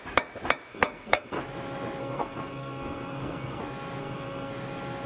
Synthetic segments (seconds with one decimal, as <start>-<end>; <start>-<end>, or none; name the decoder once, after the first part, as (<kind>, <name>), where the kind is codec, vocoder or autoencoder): 0.7-1.4 (codec, SNAC); 2.0-3.6; 4.0-4.5